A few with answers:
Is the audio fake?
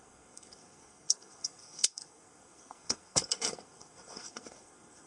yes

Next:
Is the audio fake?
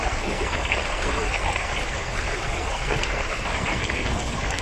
yes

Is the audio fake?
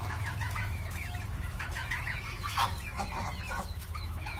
yes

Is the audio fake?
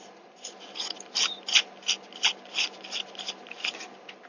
no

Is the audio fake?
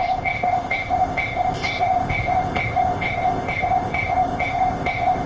yes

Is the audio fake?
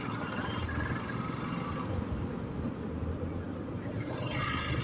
no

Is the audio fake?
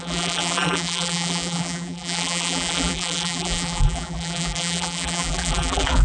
yes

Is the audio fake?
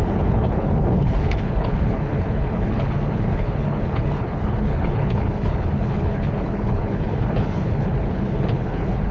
yes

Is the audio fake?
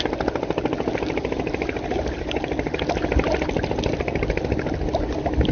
no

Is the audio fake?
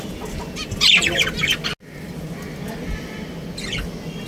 no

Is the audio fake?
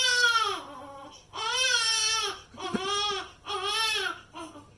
no